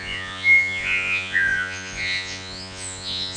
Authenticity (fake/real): fake